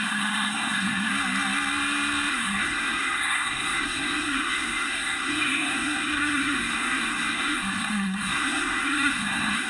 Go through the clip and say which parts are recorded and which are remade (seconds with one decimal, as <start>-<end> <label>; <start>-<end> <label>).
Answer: 0.0-1.1 remade; 1.1-2.3 recorded; 2.3-9.7 remade